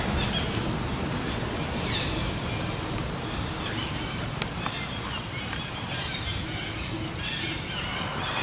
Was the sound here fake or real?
real